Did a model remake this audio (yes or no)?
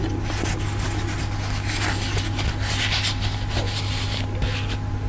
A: no